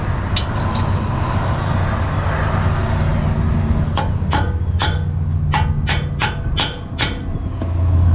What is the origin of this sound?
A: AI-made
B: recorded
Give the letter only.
B